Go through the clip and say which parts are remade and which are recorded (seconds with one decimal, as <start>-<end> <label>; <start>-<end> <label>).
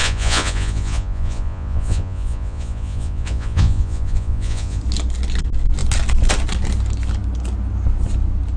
0.0-4.8 remade; 4.8-8.6 recorded